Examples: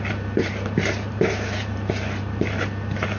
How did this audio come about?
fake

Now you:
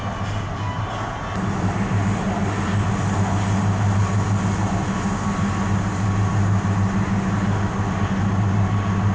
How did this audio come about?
real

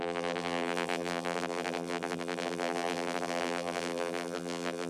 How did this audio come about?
fake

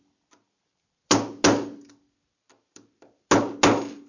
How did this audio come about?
real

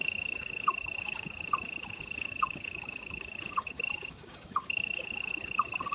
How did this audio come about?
fake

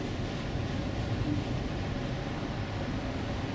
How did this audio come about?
fake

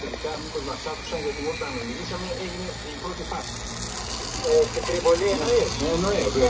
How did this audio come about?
real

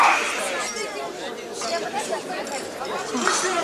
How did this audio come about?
fake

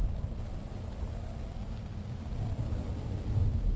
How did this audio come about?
real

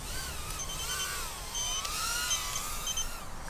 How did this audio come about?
real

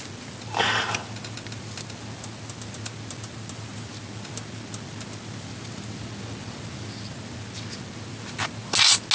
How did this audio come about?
real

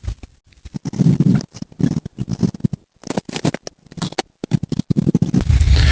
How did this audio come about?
real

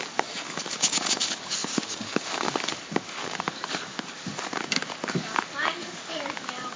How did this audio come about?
fake